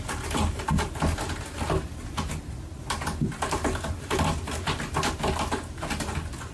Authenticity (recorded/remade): recorded